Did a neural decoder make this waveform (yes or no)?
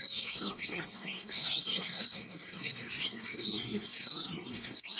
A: yes